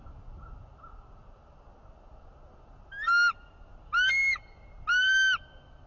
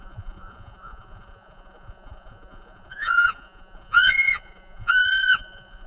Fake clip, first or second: second